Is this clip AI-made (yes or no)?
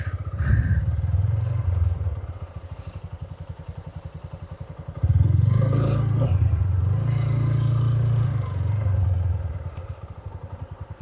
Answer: yes